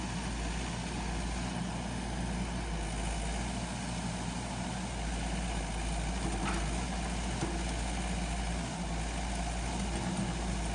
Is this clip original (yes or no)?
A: yes